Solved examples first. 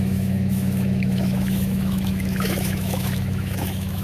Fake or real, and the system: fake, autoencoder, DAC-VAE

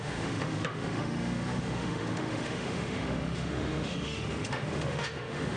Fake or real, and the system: fake, autoencoder, DAC-VAE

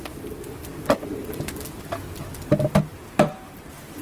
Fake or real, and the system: real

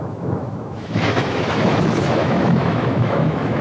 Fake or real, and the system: fake, autoencoder, DAC-VAE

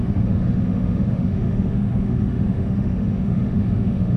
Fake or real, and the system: fake, autoencoder, DAC-VAE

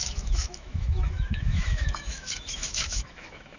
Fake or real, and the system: fake, autoencoder, DAC-VAE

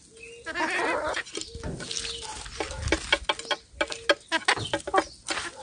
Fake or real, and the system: real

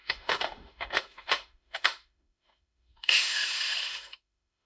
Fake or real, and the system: fake, autoencoder, DAC-VAE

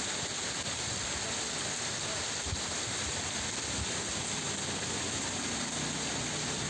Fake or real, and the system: real